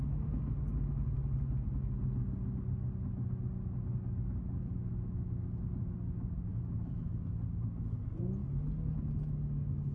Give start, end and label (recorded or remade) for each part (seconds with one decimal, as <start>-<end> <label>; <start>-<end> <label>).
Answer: 0.0-6.5 recorded; 6.5-7.1 remade; 7.1-9.9 recorded